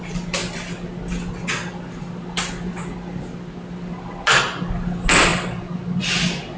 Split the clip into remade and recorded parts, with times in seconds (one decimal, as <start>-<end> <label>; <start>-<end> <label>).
0.0-6.6 recorded